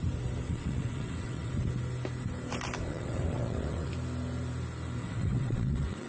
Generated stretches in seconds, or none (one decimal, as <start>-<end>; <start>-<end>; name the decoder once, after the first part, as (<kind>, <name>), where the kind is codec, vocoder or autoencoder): 0.5-1.5 (vocoder, WaveNeXt); 2.9-3.9; 5.0-6.1

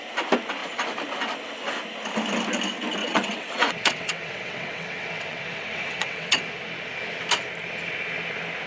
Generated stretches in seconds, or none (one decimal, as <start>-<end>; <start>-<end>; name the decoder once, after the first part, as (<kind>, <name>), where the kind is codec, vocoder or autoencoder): 3.0-6.4 (vocoder, WaveNeXt)

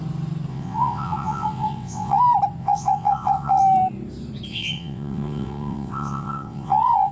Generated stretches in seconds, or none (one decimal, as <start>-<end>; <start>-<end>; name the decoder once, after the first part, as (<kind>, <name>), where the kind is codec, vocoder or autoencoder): 0.5-2.2 (vocoder, WaveNeXt); 2.6-3.6; 4.5-7.1

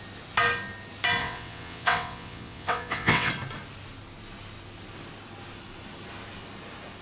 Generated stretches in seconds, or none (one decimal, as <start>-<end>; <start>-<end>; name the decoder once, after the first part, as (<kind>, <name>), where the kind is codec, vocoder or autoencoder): 1.2-3.3 (vocoder, WaveNeXt)